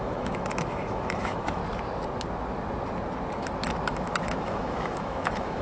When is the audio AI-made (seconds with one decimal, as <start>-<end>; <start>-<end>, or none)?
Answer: 0.0-1.6; 3.9-5.6